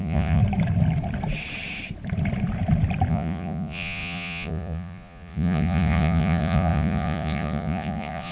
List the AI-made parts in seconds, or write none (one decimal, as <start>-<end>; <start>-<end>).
0.0-0.4; 3.1-8.3